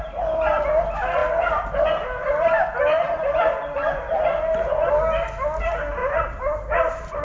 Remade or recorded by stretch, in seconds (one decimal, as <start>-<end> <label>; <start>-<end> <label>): 0.0-6.0 recorded; 6.0-7.2 remade